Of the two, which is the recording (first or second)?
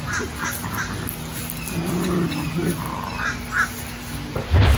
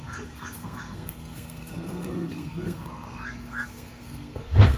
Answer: first